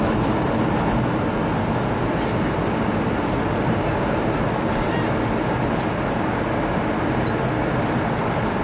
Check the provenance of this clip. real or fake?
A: real